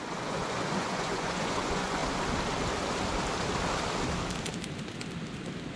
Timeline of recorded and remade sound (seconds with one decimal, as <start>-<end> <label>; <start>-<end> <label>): 0.0-2.0 remade; 2.0-5.8 recorded